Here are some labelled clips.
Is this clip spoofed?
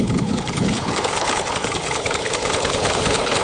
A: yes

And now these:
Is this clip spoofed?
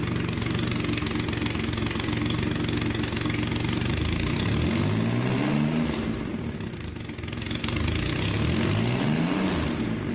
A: no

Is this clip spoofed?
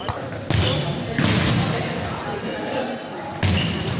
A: no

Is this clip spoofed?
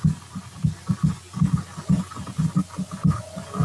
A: no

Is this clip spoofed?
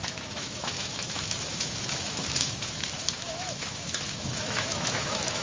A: yes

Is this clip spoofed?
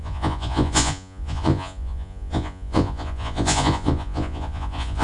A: yes